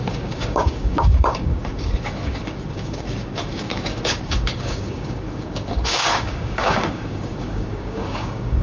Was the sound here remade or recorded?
remade